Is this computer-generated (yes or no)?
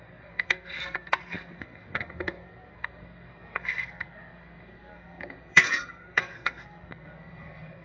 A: yes